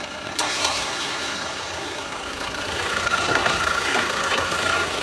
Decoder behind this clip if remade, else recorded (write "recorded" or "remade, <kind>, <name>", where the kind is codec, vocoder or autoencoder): remade, codec, SNAC